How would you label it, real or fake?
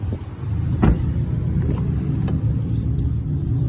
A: real